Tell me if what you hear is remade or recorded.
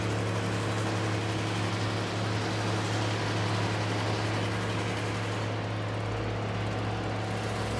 recorded